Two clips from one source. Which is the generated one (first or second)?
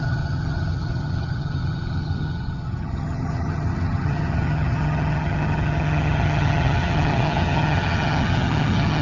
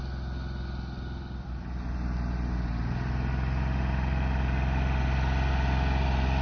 first